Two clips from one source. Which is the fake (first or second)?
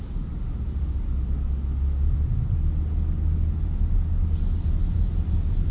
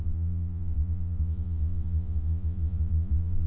second